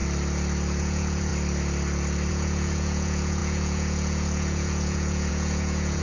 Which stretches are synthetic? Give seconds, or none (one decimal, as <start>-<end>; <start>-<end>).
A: 0.8-1.3; 2.3-6.0